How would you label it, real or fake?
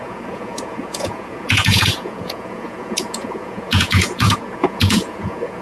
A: fake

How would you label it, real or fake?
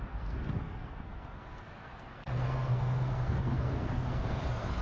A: fake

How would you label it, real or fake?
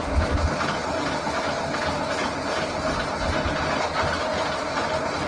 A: real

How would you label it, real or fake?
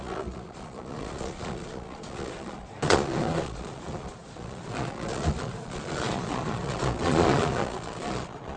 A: fake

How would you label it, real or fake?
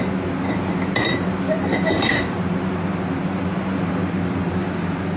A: real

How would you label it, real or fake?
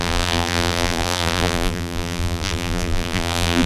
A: fake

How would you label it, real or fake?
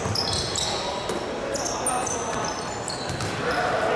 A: real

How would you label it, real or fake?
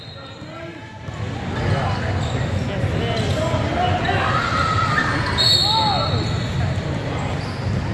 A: real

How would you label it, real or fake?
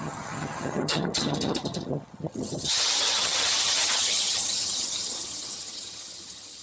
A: fake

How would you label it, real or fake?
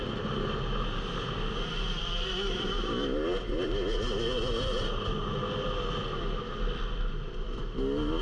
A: real